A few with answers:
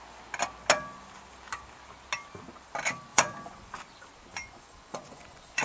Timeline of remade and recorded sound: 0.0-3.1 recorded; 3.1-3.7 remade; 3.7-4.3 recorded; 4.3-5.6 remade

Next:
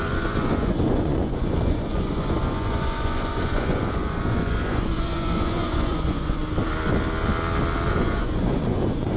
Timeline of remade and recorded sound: 0.0-6.4 remade; 6.4-7.9 recorded; 7.9-9.2 remade

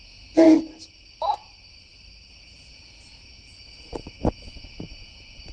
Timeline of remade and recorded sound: 0.0-0.5 remade; 0.5-2.3 recorded; 2.3-5.5 remade

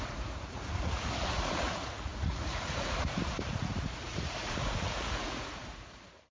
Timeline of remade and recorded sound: 0.0-6.3 remade

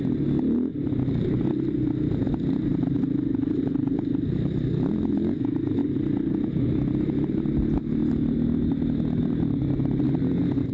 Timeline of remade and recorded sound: 0.0-10.7 recorded

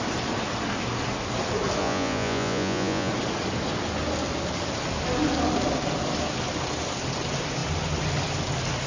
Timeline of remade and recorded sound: 0.0-1.8 recorded; 1.8-3.1 remade; 3.1-8.9 recorded

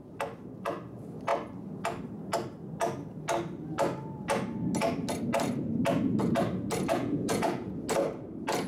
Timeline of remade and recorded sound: 0.0-6.9 recorded; 6.9-7.7 remade; 7.7-8.7 recorded